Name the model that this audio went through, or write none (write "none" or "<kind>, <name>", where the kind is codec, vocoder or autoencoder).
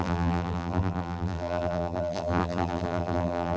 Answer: vocoder, BigVGAN v2